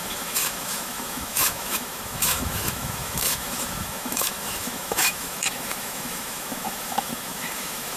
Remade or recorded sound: remade